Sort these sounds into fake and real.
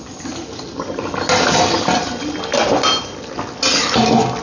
real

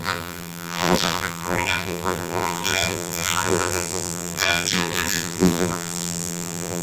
fake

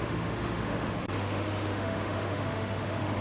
fake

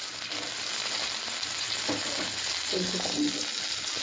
real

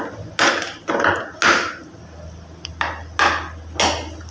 real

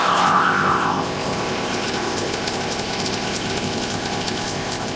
fake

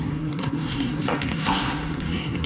fake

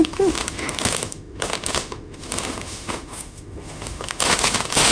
fake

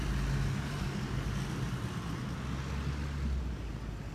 real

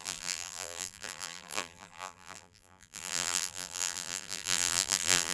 fake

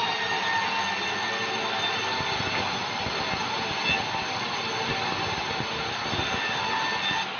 real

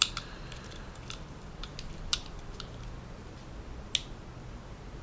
real